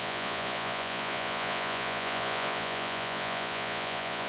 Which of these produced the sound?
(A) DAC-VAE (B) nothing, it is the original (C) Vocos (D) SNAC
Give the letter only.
C